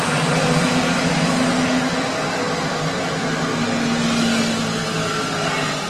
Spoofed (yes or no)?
no